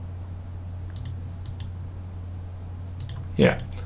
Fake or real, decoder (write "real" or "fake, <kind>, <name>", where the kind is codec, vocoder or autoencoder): real